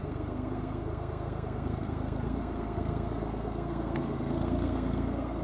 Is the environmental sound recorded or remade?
remade